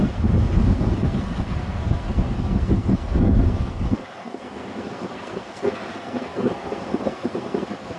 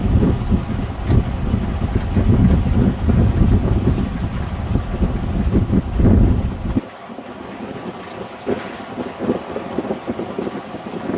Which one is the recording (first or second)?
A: second